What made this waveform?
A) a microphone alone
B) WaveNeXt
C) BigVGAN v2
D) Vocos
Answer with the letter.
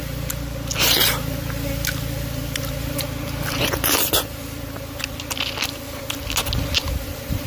A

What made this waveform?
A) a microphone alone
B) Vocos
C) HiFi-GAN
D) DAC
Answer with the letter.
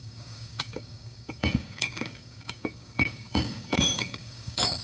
D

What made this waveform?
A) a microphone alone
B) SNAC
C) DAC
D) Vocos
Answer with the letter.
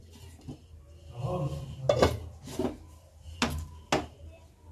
A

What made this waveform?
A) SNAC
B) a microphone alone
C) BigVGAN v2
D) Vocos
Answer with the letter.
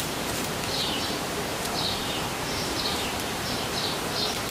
C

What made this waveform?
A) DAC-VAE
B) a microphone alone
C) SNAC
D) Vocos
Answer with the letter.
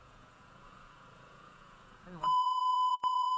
D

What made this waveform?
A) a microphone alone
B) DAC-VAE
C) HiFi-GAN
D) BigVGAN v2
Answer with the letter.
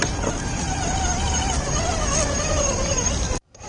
A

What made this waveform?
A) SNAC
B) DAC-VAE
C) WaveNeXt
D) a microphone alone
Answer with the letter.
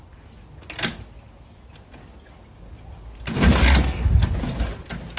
D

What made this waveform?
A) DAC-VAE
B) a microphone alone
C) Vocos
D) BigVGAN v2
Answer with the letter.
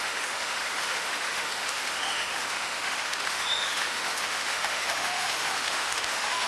A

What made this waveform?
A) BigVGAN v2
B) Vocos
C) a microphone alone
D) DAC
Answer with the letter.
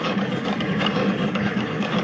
D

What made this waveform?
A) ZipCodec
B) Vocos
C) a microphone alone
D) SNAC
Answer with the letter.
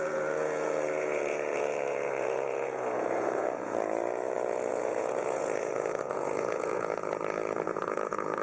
B